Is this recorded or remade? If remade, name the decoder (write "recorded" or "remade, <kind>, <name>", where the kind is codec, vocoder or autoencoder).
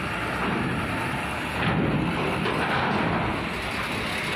recorded